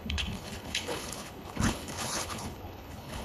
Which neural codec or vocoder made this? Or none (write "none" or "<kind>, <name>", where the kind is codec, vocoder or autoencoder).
codec, HILCodec